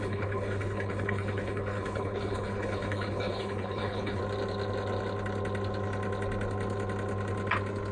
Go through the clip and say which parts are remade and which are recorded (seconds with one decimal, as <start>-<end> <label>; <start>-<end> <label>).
0.0-4.2 remade; 4.2-7.9 recorded